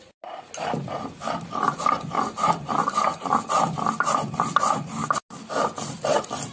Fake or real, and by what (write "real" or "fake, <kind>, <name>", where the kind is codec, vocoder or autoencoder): real